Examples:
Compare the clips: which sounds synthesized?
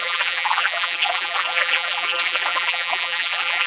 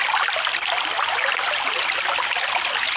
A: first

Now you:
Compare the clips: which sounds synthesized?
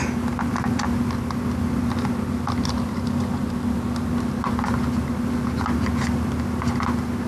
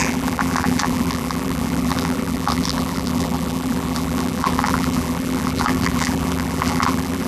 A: second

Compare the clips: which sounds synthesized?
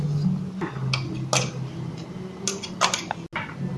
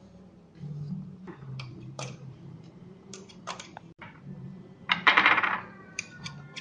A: second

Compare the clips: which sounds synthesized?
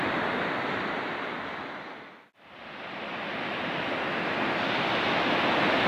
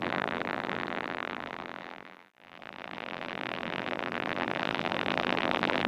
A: second